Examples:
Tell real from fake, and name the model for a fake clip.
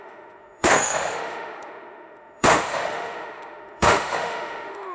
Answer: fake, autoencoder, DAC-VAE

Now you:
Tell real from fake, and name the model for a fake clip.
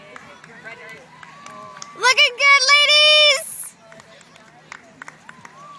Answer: real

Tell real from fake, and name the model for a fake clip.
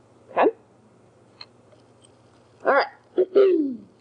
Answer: real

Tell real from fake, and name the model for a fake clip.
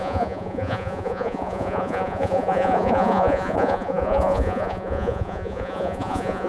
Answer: fake, vocoder, Vocos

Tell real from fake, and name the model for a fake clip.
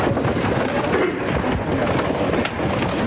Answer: real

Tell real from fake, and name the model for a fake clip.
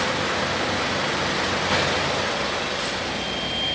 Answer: real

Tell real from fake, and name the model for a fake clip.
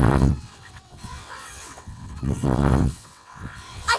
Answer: fake, vocoder, WaveNeXt